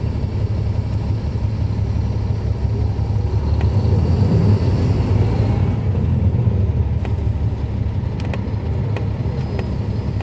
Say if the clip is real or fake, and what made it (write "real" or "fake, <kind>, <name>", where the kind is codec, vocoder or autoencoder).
real